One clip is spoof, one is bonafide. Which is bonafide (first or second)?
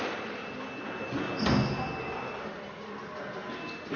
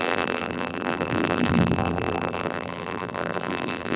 first